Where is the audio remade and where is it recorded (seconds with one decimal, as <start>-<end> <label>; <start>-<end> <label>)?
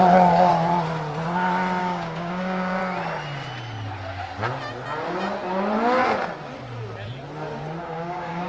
0.0-0.5 remade; 0.5-1.8 recorded; 1.8-2.8 remade; 2.8-7.8 recorded; 7.8-8.5 remade